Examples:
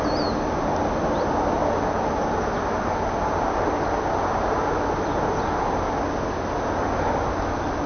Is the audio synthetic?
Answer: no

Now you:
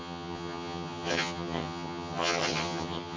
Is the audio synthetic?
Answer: yes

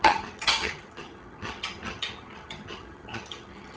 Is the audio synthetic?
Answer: yes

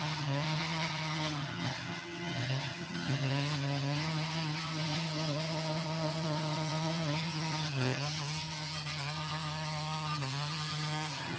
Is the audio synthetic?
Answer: yes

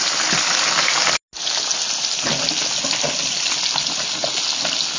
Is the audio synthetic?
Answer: no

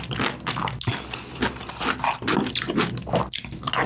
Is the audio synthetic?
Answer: no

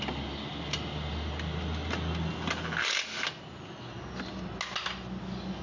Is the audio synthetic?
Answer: no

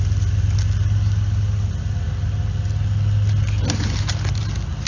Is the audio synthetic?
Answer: no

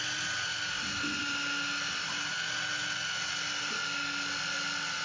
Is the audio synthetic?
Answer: no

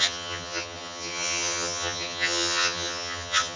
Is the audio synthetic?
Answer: yes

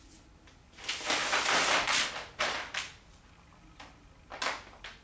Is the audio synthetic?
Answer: no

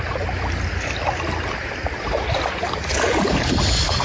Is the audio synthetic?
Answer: no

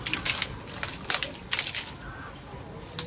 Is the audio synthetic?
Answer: no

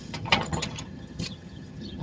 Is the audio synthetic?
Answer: yes